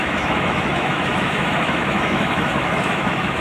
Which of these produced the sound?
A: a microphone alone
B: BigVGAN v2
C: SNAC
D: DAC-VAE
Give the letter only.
D